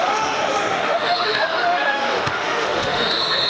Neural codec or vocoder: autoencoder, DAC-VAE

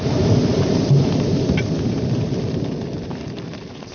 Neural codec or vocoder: none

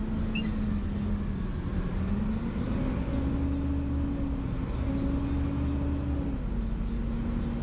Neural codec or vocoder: none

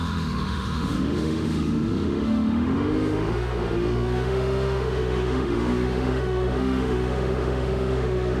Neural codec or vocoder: autoencoder, DAC-VAE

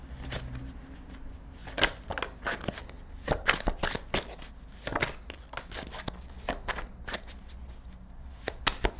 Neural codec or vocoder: none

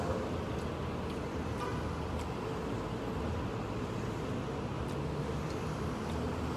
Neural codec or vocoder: none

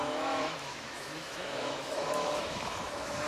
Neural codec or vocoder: autoencoder, DAC-VAE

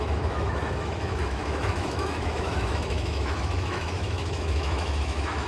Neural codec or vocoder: autoencoder, DAC-VAE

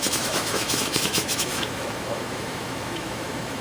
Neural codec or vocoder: autoencoder, DAC-VAE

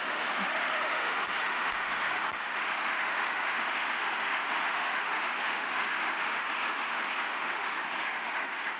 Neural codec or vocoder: autoencoder, DAC-VAE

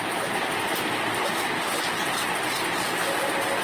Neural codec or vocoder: none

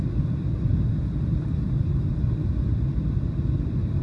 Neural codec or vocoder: none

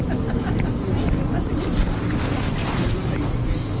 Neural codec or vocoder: none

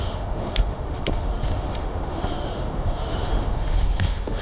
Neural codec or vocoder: autoencoder, DAC-VAE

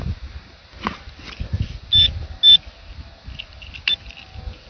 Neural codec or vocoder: none